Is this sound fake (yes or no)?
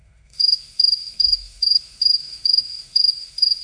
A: yes